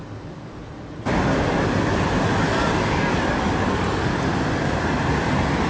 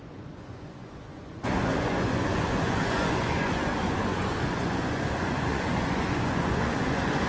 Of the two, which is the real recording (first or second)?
first